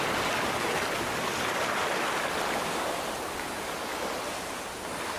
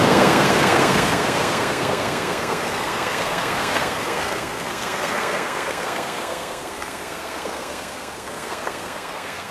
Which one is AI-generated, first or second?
second